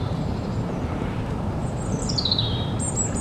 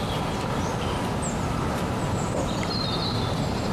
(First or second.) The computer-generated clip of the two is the first